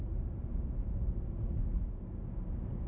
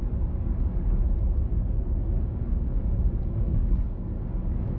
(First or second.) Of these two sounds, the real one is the first